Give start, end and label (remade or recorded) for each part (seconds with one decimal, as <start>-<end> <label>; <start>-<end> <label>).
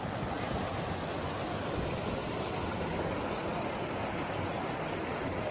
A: 0.0-5.5 recorded